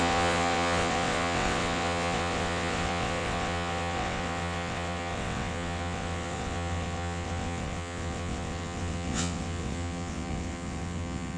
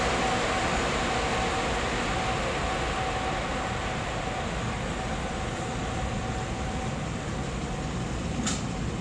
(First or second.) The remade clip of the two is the first